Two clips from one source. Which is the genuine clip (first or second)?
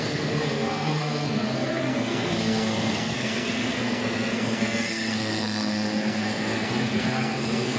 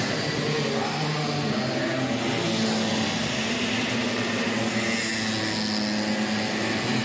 second